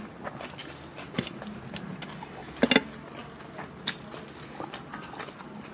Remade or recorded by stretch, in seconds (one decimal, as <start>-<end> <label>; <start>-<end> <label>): 0.0-5.7 recorded

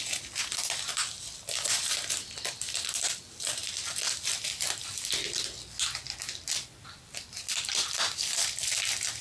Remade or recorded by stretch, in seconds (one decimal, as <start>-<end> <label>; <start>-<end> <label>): 0.0-9.2 recorded

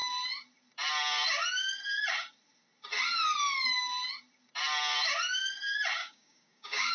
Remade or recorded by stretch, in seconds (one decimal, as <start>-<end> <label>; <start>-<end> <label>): 0.0-6.0 recorded; 6.0-6.9 remade

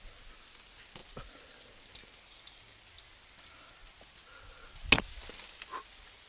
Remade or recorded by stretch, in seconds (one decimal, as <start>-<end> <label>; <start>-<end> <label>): 0.0-6.3 recorded